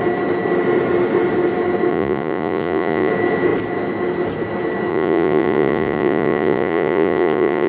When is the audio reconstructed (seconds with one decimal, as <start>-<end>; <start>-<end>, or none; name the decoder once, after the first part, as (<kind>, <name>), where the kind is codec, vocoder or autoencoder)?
1.9-3.1 (vocoder, Vocos); 4.9-7.7